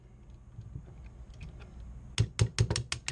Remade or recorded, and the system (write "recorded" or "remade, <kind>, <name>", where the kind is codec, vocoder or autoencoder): recorded